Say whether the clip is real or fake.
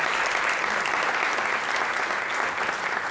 real